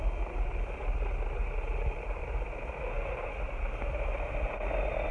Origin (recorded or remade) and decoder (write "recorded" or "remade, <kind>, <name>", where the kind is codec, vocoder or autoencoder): recorded